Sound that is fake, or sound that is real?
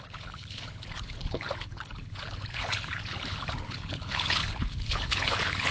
fake